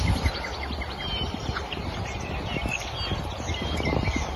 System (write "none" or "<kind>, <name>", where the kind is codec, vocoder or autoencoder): none